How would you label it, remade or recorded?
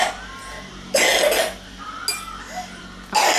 recorded